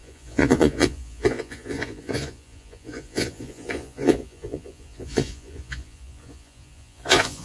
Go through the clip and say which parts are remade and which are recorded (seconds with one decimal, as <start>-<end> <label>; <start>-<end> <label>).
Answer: 0.0-7.4 remade